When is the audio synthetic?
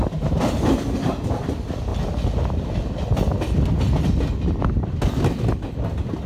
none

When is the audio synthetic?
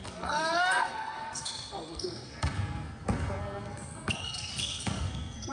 0.0-5.5 (codec, SNAC)